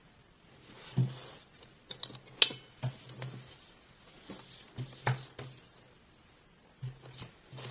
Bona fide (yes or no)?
yes